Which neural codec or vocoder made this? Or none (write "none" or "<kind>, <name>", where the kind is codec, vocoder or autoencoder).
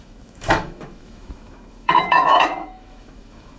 autoencoder, DAC-VAE